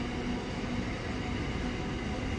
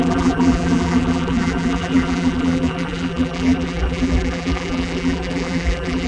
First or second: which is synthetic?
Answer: second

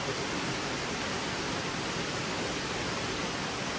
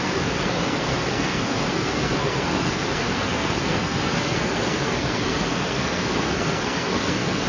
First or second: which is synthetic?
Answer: second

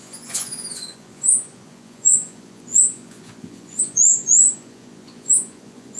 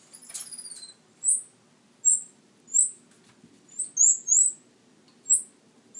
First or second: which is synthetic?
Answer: first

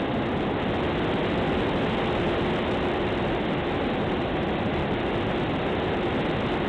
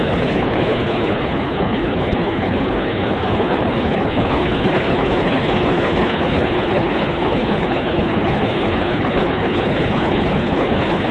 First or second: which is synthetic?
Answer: second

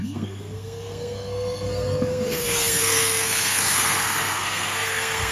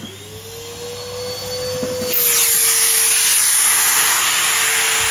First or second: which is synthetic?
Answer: first